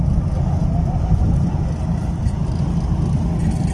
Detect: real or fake real